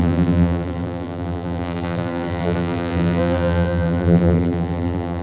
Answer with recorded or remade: remade